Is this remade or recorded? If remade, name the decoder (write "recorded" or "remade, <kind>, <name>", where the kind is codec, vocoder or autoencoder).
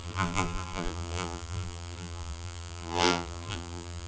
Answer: remade, vocoder, BigVGAN v2